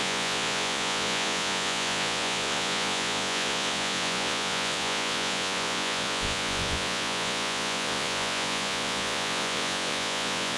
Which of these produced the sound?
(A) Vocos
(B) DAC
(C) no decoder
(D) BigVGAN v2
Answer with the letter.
A